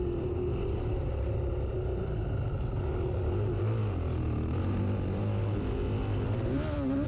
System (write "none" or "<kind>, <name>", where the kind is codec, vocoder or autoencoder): none